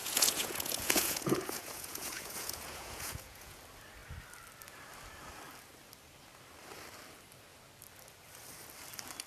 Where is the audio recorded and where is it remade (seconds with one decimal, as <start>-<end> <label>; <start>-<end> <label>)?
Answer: 0.0-3.6 remade; 3.6-9.3 recorded